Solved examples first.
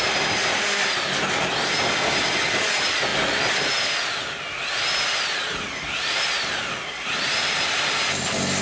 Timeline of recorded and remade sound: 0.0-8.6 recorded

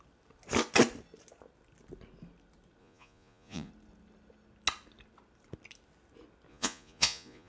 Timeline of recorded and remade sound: 0.0-2.8 recorded; 2.8-3.7 remade; 3.7-6.5 recorded; 6.5-7.5 remade

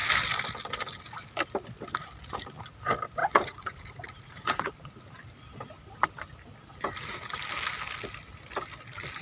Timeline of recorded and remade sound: 0.0-3.2 recorded; 3.2-4.7 remade; 4.7-9.2 recorded

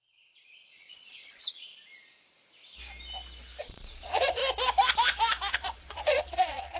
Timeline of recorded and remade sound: 0.0-1.7 remade; 1.7-3.6 recorded; 3.6-4.4 remade; 4.4-5.5 recorded; 5.5-6.8 remade